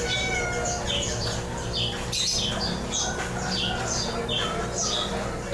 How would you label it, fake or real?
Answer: real